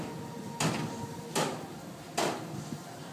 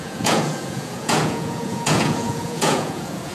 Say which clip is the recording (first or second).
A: first